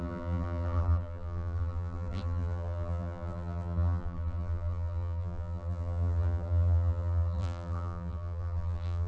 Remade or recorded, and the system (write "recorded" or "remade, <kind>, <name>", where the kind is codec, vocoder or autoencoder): remade, vocoder, BigVGAN v2